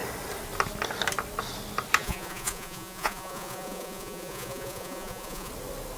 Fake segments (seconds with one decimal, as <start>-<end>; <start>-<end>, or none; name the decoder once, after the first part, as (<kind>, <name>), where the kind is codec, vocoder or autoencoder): 2.0-5.5 (vocoder, Vocos)